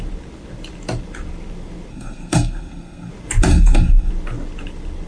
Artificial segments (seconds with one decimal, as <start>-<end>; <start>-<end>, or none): 1.9-3.1; 3.5-4.1